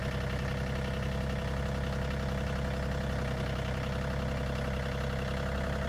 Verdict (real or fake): real